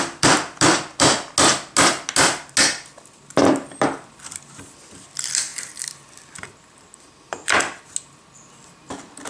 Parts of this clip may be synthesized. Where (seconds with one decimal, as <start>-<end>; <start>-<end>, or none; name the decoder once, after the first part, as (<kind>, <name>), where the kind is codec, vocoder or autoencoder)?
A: none